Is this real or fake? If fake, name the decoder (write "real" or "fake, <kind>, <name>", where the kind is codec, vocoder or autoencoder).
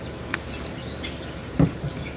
real